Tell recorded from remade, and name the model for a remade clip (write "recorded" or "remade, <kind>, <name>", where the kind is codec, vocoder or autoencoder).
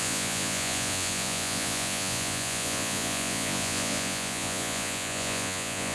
remade, vocoder, Vocos